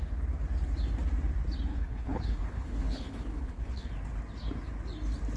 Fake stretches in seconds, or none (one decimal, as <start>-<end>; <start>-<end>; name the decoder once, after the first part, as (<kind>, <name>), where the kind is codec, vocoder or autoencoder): 1.7-3.9 (codec, HILCodec)